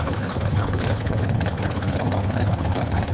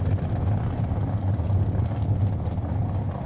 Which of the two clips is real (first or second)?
second